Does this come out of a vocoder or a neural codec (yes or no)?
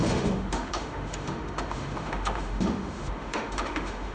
yes